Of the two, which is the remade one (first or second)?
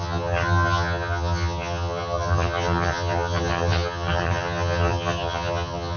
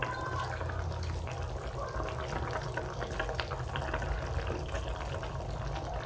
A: first